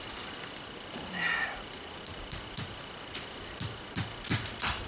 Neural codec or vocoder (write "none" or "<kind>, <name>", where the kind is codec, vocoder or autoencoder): none